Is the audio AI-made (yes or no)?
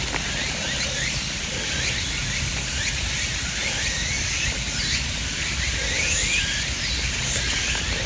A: no